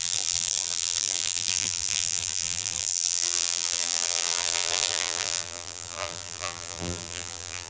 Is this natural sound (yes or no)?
no